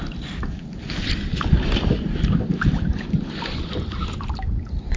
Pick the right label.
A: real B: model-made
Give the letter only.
A